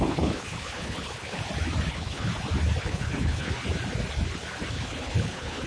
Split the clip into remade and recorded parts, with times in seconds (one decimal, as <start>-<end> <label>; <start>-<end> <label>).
0.0-1.4 remade; 1.4-1.9 recorded; 1.9-2.3 remade; 2.3-2.8 recorded; 2.8-3.6 remade; 3.6-4.7 recorded; 4.7-5.7 remade